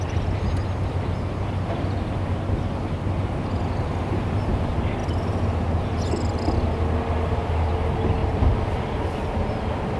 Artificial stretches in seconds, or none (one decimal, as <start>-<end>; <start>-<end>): 8.2-9.1